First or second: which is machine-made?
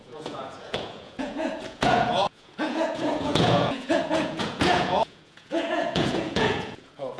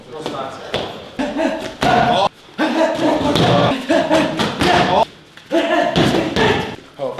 first